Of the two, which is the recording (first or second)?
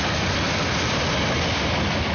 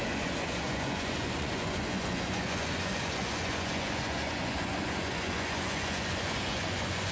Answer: first